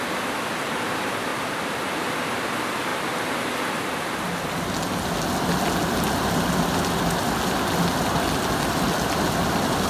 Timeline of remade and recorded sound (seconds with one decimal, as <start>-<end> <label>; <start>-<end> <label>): 0.0-1.3 recorded; 1.3-1.9 remade; 1.9-9.9 recorded